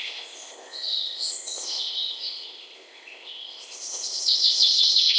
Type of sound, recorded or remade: remade